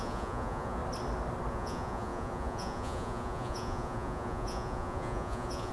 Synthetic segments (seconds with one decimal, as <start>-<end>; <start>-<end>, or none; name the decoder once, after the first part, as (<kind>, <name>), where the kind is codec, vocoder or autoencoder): 0.0-0.8 (vocoder, Vocos); 1.5-5.7